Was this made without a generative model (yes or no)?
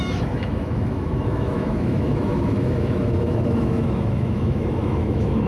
no